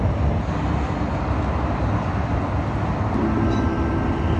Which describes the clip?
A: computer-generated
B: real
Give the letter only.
B